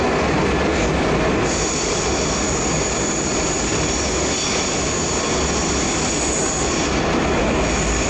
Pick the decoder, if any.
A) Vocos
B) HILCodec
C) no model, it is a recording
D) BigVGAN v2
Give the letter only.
C